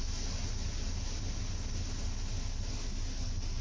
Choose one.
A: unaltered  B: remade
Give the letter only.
A